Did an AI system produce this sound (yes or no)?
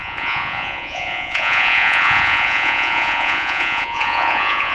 yes